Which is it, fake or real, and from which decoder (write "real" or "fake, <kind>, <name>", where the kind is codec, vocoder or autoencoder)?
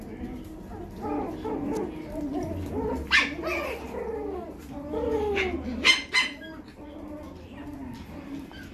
real